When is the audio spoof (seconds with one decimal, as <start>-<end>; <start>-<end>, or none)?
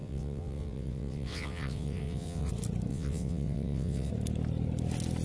0.0-2.5; 2.9-4.1